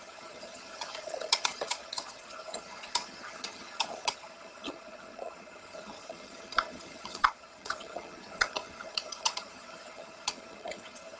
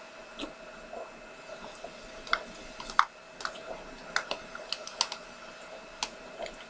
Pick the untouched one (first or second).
second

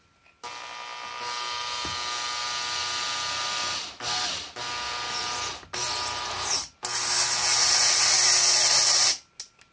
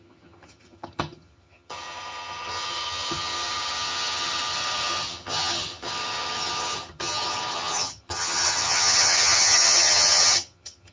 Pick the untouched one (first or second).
first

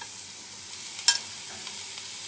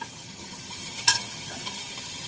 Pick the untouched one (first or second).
first